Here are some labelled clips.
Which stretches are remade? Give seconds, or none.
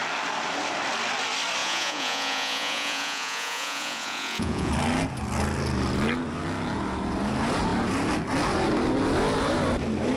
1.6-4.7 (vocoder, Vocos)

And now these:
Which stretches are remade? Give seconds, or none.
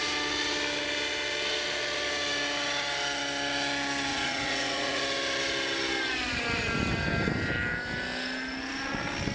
4.1-5.0 (vocoder, Vocos)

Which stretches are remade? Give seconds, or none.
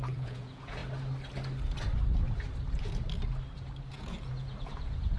0.0-0.8 (vocoder, Vocos); 3.9-5.2